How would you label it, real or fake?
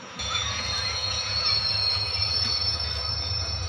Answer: fake